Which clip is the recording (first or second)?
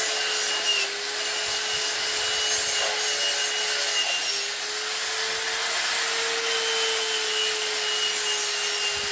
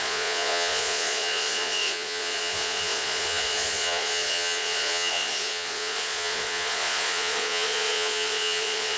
first